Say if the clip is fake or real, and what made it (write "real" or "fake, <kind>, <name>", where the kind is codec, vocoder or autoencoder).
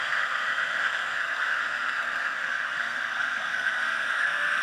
fake, codec, SNAC